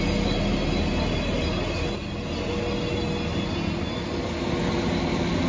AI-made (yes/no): no